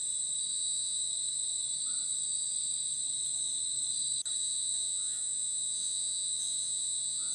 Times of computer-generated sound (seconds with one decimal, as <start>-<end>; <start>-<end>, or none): 0.5-1.1; 4.4-7.3